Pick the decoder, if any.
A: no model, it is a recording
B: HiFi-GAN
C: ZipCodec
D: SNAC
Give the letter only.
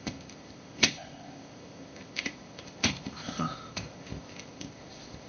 C